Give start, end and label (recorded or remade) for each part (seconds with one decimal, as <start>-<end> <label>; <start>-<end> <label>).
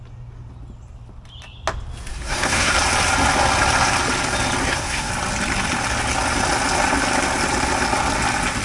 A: 0.0-2.1 recorded; 2.1-2.7 remade; 2.7-4.6 recorded; 4.6-5.1 remade; 5.1-8.6 recorded